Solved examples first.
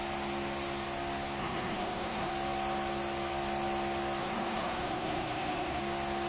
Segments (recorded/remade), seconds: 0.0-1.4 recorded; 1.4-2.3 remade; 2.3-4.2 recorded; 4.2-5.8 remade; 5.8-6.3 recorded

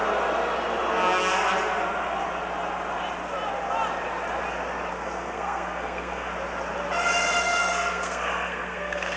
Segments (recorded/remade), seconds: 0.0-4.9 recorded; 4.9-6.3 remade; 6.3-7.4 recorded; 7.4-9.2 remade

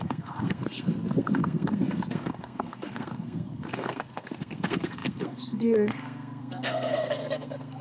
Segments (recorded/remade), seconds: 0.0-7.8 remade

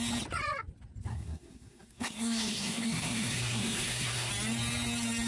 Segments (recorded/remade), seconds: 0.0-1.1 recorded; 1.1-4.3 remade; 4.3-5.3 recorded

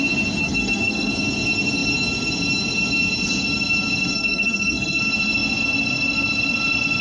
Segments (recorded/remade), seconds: 0.0-0.4 recorded; 0.4-1.1 remade; 1.1-4.1 recorded; 4.1-5.0 remade; 5.0-7.0 recorded

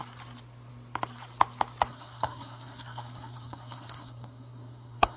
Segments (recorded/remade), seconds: 0.0-1.9 recorded; 1.9-5.2 remade

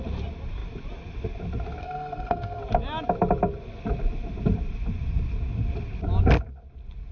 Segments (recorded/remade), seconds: 0.0-1.8 recorded; 1.8-2.6 remade; 2.6-7.1 recorded

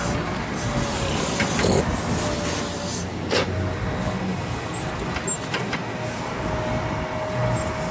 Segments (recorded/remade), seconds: 0.0-7.9 recorded